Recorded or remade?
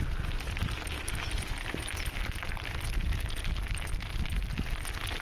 recorded